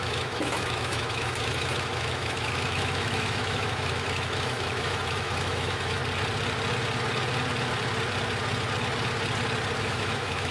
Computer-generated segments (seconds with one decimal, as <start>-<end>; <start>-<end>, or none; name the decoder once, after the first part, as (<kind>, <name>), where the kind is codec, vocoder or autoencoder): 0.0-6.0 (autoencoder, DAC-VAE); 9.8-10.5